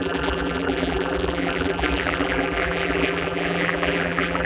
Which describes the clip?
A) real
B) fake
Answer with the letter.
B